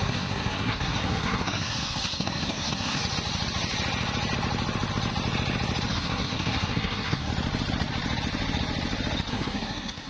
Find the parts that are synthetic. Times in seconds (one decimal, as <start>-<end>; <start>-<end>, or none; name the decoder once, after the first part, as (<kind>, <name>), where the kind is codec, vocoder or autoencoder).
0.0-3.0 (codec, SNAC); 5.9-7.3; 9.3-10.1